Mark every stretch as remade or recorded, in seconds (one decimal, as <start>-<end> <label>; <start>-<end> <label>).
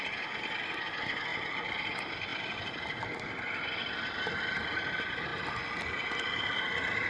0.0-7.1 recorded